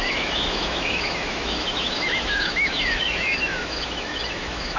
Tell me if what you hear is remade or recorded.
remade